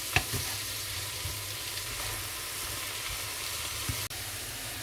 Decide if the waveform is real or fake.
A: real